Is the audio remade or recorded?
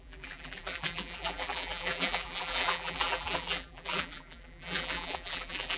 remade